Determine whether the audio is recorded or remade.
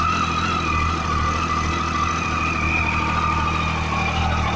recorded